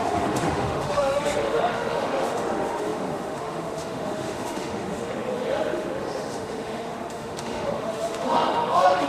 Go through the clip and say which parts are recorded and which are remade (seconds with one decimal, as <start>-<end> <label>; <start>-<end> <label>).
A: 0.0-9.1 remade